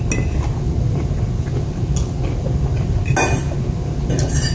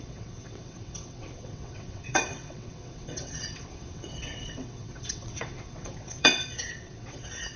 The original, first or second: first